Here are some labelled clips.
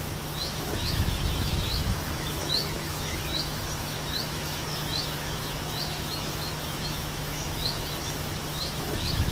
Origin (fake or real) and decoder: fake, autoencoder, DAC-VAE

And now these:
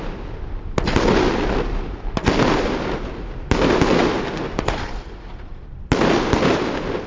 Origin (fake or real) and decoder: real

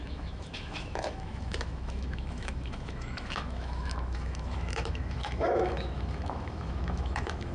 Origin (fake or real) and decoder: fake, autoencoder, DAC-VAE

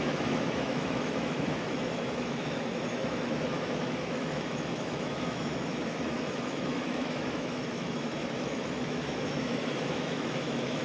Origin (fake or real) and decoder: fake, autoencoder, DAC-VAE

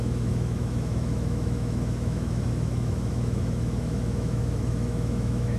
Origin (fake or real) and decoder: fake, autoencoder, DAC-VAE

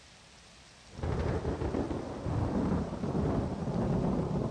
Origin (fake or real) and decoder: real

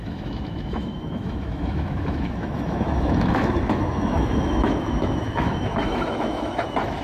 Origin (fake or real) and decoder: fake, autoencoder, DAC-VAE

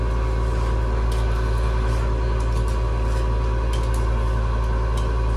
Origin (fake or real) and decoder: real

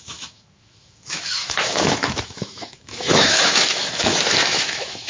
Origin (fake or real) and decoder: fake, autoencoder, DAC-VAE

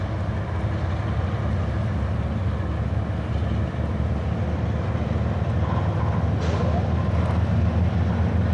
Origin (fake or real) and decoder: real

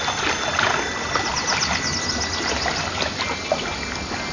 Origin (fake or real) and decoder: real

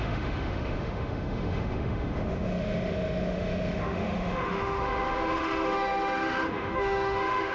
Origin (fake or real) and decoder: fake, autoencoder, DAC-VAE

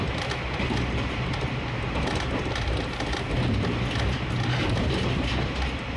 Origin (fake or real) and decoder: real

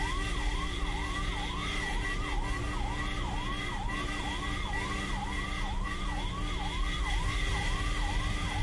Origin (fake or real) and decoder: real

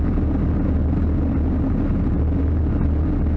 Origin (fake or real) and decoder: real